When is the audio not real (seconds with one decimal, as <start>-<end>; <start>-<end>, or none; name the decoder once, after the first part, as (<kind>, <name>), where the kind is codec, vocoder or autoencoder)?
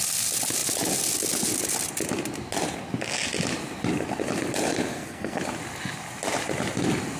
4.9-5.4 (codec, SNAC)